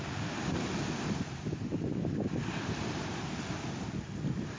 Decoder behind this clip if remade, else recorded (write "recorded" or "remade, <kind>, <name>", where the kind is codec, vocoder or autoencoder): recorded